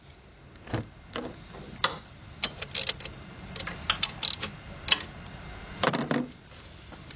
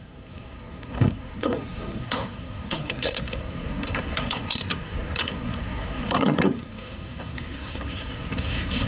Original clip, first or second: first